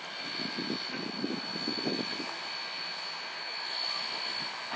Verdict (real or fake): real